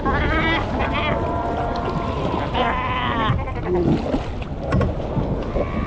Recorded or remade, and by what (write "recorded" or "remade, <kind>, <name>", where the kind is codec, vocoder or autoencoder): recorded